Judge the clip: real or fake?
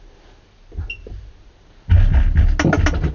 real